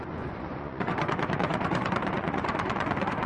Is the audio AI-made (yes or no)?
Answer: yes